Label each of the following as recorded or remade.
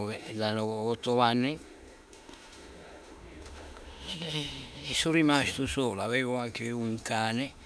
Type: remade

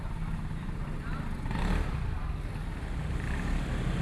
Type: recorded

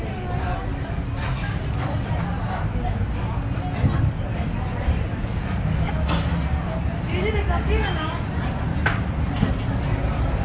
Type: recorded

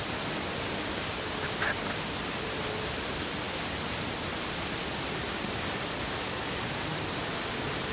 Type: recorded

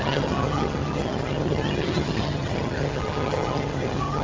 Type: remade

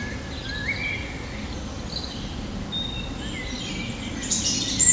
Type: recorded